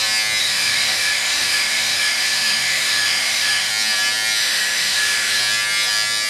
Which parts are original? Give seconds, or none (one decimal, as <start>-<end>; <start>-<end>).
0.0-0.4; 3.7-4.4; 5.4-6.3